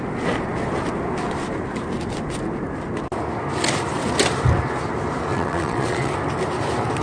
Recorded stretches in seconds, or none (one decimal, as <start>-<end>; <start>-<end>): 0.0-5.3; 6.1-7.0